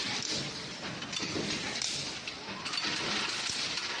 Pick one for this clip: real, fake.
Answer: real